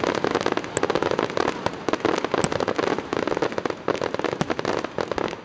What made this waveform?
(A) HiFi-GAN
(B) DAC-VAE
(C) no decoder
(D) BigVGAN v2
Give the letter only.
C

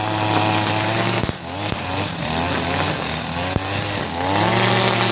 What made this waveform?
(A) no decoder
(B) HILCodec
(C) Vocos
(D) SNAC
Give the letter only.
A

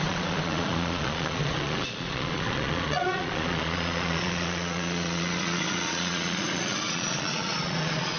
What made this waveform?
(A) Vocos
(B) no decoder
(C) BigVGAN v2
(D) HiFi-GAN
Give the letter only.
A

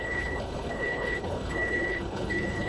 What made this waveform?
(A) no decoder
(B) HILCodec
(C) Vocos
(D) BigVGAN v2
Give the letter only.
B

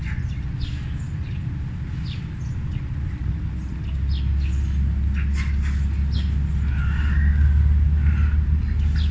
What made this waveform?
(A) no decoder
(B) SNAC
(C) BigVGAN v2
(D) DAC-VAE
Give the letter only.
A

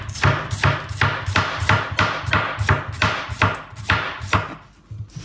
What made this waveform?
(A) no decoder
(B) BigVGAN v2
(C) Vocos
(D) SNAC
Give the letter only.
A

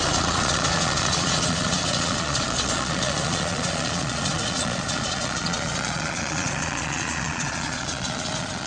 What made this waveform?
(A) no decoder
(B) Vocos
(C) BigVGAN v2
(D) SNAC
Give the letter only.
B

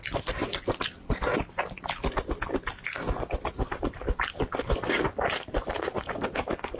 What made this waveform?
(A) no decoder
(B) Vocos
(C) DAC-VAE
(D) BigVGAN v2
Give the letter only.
A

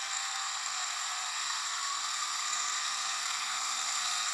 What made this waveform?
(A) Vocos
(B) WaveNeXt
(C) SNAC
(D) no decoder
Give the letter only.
C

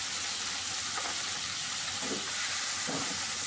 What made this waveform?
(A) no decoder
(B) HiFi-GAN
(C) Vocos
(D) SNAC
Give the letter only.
A